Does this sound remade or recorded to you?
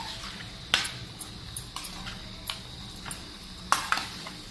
recorded